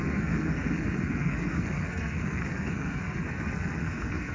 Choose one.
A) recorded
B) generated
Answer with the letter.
B